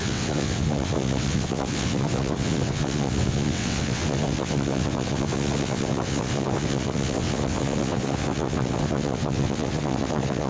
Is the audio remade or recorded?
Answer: remade